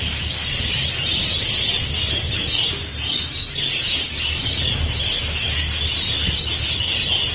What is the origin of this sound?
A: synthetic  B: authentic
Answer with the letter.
B